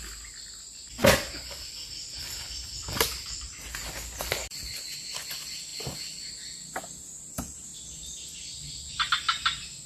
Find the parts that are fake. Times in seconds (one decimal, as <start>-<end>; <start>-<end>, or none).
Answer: 1.0-4.6; 7.7-9.1